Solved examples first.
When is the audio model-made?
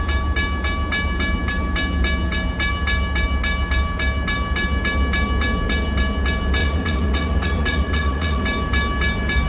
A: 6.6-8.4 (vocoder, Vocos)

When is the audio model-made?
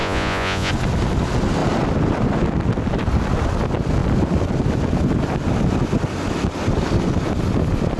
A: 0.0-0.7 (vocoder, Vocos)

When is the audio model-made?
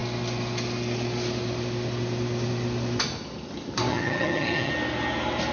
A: 3.9-4.7 (vocoder, HiFi-GAN)